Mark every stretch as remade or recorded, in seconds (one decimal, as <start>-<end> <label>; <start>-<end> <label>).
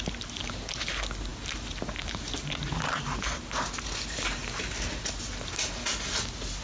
0.0-6.6 recorded